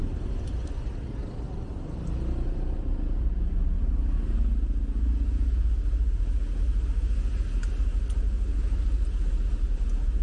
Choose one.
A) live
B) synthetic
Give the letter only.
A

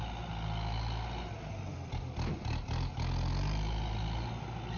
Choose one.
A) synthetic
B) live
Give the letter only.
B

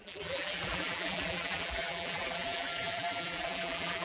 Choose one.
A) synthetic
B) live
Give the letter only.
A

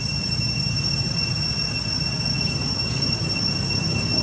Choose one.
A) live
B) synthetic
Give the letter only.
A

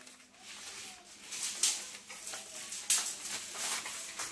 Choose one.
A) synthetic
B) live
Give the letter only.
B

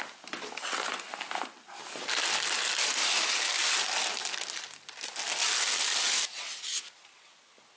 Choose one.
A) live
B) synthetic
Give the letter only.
A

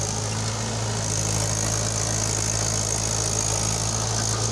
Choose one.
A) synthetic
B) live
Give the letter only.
B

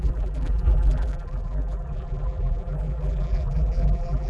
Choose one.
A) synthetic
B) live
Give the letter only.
A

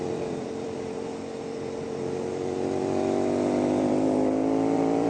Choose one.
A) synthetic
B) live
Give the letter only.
A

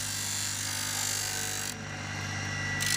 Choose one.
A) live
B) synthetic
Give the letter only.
A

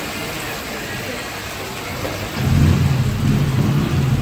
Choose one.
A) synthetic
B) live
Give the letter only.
B